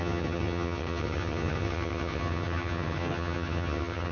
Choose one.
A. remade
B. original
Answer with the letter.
A